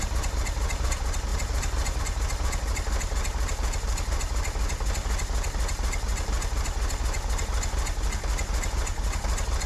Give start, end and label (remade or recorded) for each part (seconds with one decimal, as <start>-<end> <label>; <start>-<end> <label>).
0.0-9.7 recorded